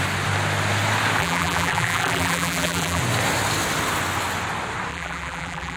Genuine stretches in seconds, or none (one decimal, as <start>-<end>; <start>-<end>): 0.0-1.2; 3.0-4.9

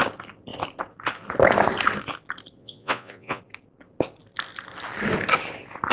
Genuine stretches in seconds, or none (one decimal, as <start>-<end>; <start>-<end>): 0.0-2.6; 3.4-5.9

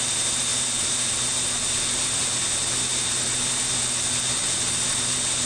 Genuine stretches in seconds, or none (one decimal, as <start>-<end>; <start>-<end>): 0.0-5.5

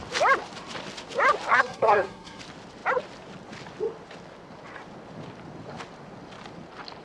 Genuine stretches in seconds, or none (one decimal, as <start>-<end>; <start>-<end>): 0.0-1.5; 2.4-7.0

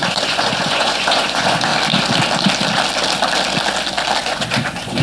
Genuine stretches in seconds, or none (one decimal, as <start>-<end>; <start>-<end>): 1.7-4.2

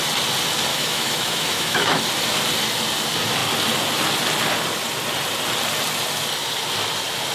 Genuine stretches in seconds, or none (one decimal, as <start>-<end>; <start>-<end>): 0.0-0.7; 2.0-7.3

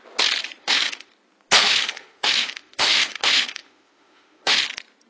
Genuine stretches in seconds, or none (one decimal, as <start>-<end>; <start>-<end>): 0.0-0.6; 1.1-1.6; 4.6-5.1

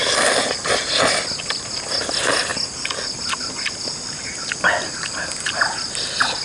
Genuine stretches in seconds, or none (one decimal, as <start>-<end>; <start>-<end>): 0.0-6.4